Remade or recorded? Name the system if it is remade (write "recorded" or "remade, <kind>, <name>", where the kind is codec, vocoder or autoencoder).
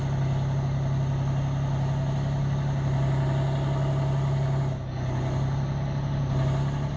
recorded